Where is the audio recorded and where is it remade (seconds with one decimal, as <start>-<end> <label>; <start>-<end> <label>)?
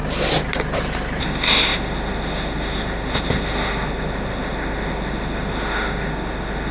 0.0-1.2 recorded; 1.2-6.7 remade